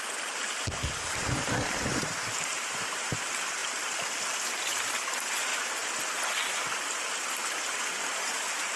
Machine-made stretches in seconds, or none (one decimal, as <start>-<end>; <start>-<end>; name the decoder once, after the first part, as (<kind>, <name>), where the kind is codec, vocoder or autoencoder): none